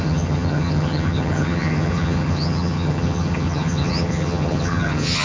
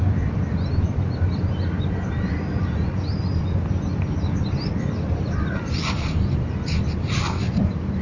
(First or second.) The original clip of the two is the second